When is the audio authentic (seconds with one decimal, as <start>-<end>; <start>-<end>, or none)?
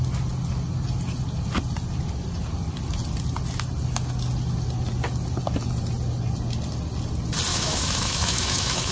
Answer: 0.0-7.5